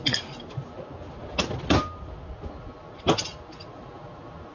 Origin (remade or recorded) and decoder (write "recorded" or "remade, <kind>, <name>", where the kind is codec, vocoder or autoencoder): recorded